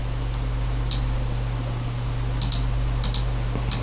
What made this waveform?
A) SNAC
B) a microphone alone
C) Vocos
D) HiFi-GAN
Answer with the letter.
B